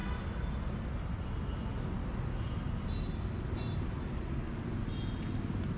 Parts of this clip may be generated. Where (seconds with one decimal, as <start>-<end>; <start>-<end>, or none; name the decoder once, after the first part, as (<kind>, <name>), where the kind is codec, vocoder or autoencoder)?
none